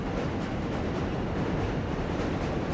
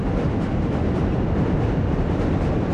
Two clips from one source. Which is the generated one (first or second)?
second